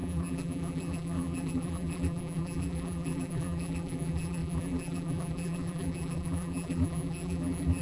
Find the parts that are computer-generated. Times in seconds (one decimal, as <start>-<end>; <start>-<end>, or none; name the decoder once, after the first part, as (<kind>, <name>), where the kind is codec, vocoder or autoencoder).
0.0-7.8 (vocoder, BigVGAN v2)

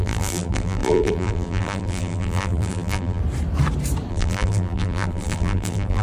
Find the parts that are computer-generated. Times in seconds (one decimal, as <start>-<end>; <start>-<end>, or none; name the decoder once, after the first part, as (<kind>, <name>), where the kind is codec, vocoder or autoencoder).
0.0-3.2 (vocoder, BigVGAN v2); 4.1-6.0

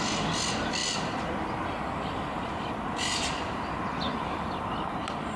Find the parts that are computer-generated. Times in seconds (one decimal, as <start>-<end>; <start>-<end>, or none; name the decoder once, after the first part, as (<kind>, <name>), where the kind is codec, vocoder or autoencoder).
none

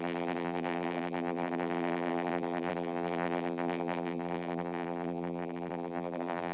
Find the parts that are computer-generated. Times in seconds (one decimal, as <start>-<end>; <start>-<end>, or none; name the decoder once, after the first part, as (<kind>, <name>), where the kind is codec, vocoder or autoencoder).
0.0-6.5 (vocoder, BigVGAN v2)

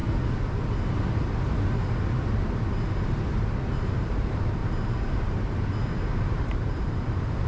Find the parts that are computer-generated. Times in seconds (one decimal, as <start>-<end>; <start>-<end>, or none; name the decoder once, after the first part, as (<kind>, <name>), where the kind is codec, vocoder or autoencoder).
4.0-4.6 (vocoder, BigVGAN v2); 6.1-7.5

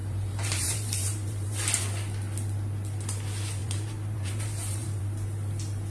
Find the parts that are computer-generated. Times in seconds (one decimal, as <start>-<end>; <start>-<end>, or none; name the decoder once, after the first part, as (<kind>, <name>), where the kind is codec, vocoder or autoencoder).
0.0-1.8 (vocoder, BigVGAN v2); 3.6-5.0

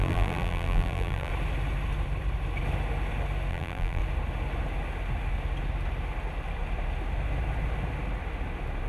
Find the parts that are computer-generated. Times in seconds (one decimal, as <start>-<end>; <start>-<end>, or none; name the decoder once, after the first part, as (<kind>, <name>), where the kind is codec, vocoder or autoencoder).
0.0-1.3 (vocoder, BigVGAN v2); 3.5-4.0

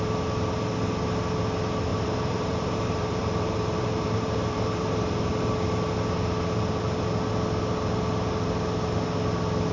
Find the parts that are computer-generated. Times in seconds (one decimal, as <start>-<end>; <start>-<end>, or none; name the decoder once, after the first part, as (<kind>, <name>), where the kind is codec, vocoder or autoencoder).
1.9-5.3 (vocoder, BigVGAN v2)